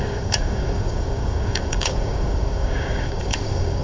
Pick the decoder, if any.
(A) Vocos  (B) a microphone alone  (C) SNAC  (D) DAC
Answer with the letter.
D